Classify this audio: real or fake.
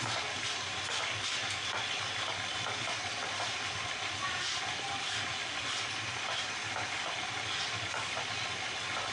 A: real